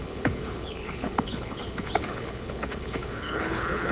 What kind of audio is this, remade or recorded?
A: remade